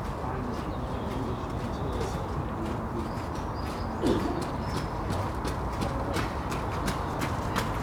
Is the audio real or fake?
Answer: real